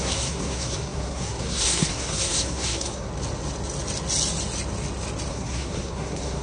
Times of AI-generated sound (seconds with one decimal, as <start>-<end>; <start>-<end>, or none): 0.0-3.1; 5.3-6.4